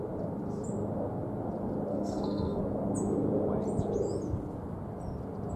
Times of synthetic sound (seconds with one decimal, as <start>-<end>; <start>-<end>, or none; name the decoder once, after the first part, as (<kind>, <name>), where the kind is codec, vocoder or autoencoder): 1.9-2.6 (codec, SNAC)